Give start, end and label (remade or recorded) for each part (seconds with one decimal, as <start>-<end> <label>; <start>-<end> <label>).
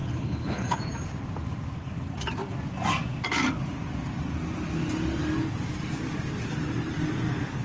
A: 0.0-0.8 remade; 0.8-7.6 recorded